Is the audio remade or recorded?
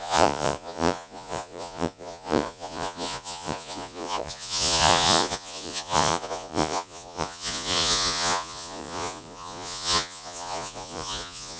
remade